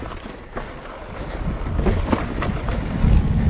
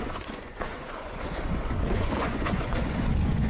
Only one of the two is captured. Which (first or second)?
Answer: first